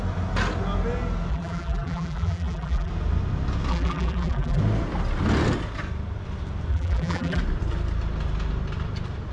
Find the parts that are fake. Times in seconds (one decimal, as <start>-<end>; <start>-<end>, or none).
1.3-2.9; 3.7-4.6; 6.7-7.4